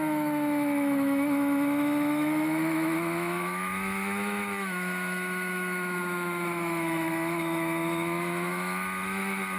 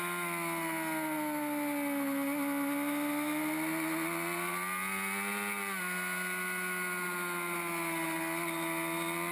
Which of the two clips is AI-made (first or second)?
first